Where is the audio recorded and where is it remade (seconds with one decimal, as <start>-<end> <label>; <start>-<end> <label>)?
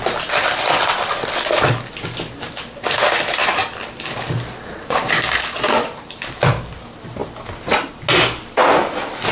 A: 0.0-9.3 recorded